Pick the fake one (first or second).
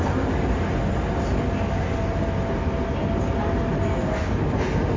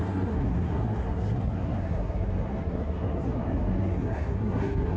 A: second